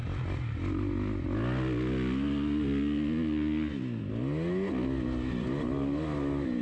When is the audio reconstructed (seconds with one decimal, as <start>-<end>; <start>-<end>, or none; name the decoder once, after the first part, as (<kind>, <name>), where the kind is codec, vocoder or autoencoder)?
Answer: none

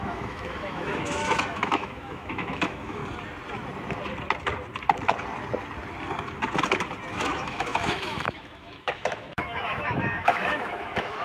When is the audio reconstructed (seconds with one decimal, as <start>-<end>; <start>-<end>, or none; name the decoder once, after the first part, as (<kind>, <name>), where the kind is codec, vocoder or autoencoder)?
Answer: 0.0-3.0 (autoencoder, DAC-VAE); 7.1-11.2

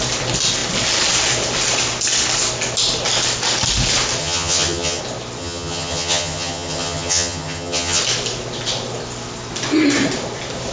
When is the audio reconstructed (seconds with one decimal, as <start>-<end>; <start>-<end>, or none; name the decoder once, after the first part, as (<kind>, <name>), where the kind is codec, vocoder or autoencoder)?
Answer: 4.2-5.0 (vocoder, HiFi-GAN); 5.4-8.0

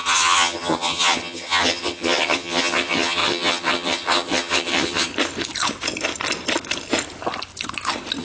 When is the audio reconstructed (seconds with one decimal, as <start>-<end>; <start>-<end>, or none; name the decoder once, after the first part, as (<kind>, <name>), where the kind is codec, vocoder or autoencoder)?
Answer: 0.0-5.1 (vocoder, HiFi-GAN)

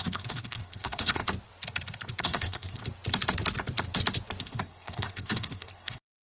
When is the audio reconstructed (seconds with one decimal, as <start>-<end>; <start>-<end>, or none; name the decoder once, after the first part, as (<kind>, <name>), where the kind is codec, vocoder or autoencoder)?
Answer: 0.0-1.2 (codec, SNAC); 2.2-2.8; 4.4-6.2

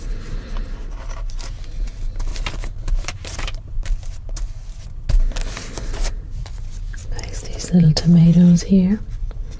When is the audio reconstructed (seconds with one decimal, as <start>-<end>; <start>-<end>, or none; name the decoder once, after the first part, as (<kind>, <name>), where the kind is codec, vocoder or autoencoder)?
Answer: 2.3-4.3 (vocoder, BigVGAN v2); 7.0-8.6